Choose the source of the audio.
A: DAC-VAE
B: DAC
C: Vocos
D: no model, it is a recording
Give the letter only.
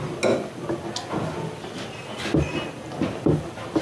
D